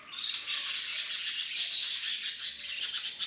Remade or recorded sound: recorded